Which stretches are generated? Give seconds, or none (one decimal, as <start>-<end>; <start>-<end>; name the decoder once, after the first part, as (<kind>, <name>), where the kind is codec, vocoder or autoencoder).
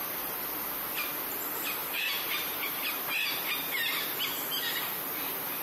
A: 1.8-2.8 (vocoder, BigVGAN v2)